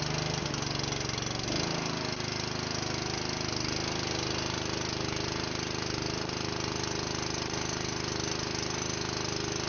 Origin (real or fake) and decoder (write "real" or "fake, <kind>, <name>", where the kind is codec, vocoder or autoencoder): real